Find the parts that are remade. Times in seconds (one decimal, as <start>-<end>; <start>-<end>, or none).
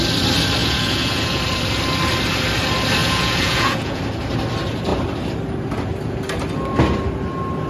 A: 0.6-1.4; 3.0-4.0